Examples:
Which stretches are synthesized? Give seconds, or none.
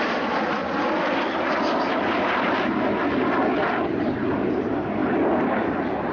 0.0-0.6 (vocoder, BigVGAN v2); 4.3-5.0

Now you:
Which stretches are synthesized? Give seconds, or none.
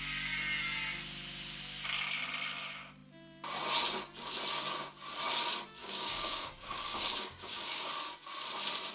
5.8-7.9 (codec, DAC)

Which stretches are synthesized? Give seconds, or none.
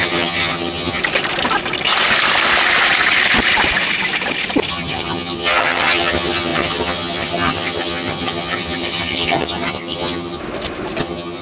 0.0-1.0 (vocoder, HiFi-GAN); 4.7-10.4; 11.0-11.4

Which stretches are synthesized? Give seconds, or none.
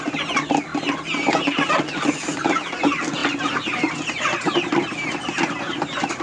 none